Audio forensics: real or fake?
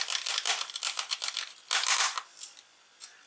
real